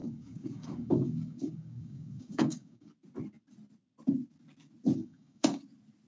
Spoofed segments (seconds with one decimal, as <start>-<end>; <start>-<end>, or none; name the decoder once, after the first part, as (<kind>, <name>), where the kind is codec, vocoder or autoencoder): 0.0-2.9 (codec, DAC); 5.0-5.6